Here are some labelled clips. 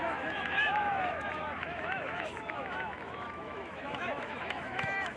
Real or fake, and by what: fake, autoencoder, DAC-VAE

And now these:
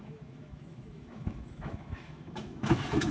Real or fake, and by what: fake, autoencoder, DAC-VAE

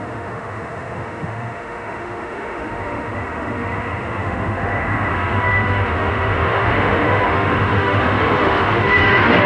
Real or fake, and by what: fake, autoencoder, DAC-VAE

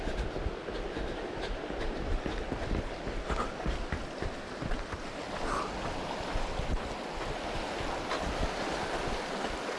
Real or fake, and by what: real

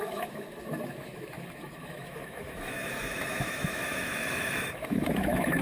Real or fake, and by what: fake, autoencoder, DAC-VAE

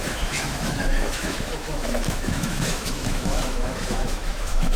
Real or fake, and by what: fake, autoencoder, DAC-VAE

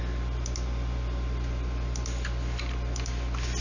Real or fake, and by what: real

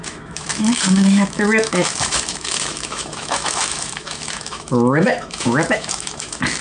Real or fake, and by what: fake, autoencoder, DAC-VAE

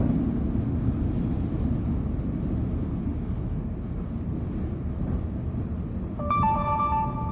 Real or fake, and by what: real